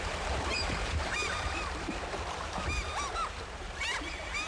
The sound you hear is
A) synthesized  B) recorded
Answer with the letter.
A